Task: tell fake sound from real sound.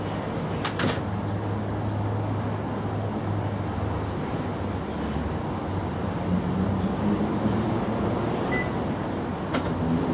real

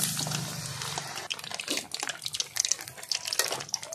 real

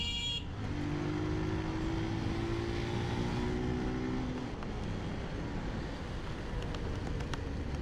real